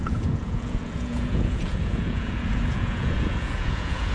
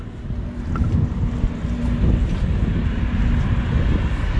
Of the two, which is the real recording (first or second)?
second